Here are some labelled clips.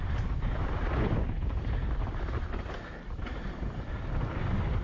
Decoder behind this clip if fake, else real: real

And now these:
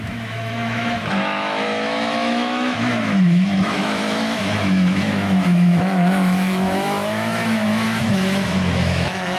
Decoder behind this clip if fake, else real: fake, autoencoder, DAC-VAE